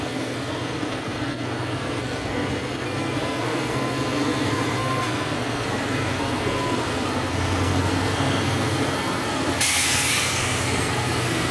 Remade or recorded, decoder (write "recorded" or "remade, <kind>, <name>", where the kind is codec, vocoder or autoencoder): remade, codec, SNAC